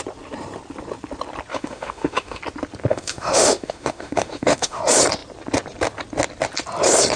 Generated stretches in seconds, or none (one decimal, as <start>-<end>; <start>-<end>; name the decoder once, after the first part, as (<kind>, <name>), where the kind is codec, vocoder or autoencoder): 1.5-2.4 (autoencoder, DAC-VAE); 2.9-4.8